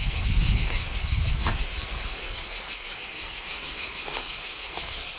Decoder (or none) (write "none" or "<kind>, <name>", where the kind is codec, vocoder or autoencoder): codec, SNAC